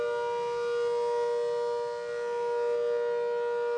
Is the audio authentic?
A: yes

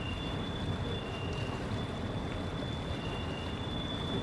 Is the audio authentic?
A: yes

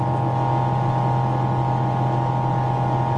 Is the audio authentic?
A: yes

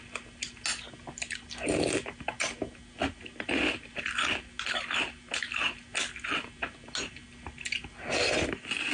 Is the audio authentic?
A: yes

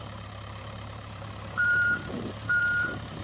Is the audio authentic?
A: no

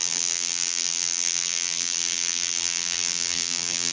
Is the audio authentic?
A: no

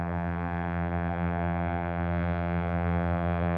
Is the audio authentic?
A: no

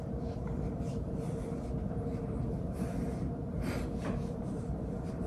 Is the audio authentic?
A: no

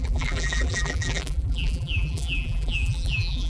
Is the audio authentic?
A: no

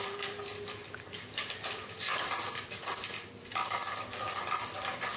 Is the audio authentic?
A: yes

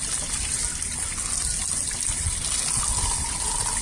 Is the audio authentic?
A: yes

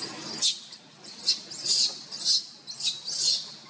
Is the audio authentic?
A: yes